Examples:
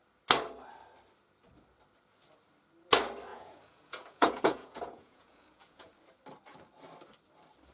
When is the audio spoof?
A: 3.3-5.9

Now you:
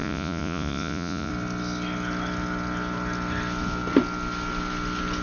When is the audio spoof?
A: 0.0-1.3

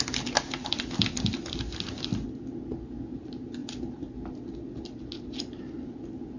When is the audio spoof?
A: none